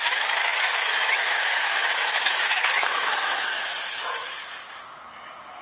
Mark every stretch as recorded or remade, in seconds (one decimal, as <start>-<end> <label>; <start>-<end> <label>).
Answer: 0.0-4.2 remade; 4.2-4.8 recorded; 4.8-5.6 remade